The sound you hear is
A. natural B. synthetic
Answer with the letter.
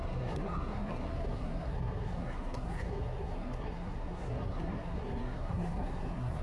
B